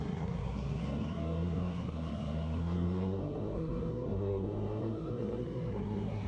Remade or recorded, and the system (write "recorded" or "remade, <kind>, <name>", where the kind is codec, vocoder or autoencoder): remade, codec, SNAC